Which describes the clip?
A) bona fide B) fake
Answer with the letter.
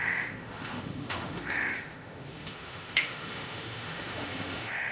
B